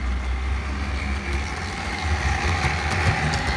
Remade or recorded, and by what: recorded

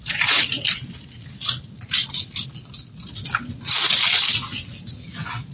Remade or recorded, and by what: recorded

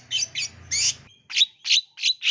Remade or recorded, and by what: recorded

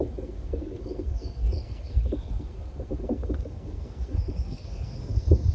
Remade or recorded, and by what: remade, codec, SNAC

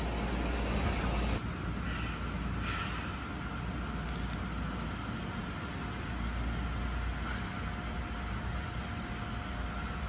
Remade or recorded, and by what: recorded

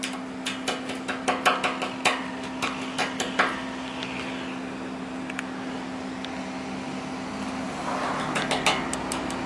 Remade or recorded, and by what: recorded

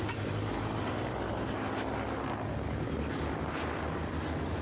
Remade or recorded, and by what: recorded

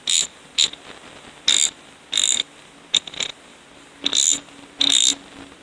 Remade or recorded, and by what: recorded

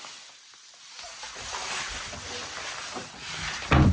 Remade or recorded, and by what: recorded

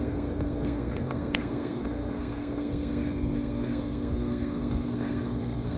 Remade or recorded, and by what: remade, codec, SNAC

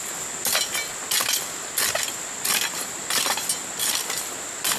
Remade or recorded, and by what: recorded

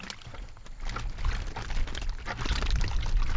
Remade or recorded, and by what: recorded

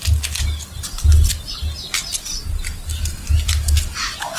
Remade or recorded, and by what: recorded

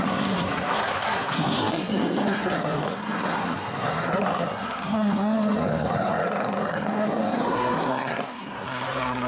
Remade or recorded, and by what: remade, codec, SNAC